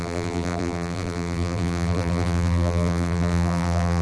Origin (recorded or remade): remade